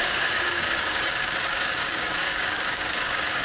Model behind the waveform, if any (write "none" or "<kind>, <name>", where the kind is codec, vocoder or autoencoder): codec, DAC